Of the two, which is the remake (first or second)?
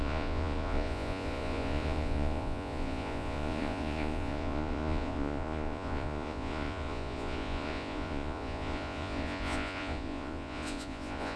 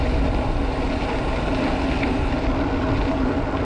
first